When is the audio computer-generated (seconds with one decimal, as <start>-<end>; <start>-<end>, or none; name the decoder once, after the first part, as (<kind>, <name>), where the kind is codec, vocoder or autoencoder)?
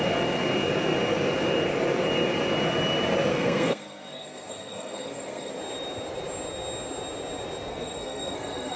3.3-5.5 (codec, SNAC); 7.7-8.8